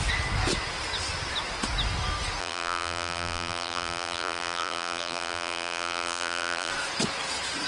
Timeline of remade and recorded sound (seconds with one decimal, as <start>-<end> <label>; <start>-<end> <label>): 0.0-2.4 recorded; 2.4-6.7 remade; 6.7-7.7 recorded